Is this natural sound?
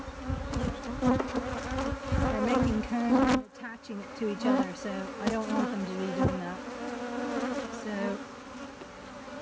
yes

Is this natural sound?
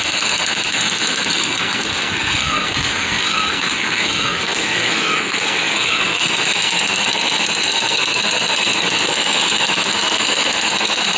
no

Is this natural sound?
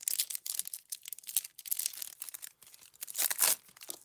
yes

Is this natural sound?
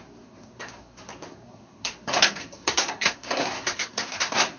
no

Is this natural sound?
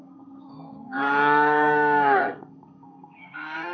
no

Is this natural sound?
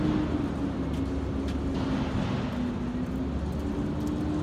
yes